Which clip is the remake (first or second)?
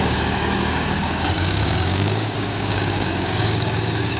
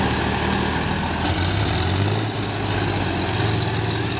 first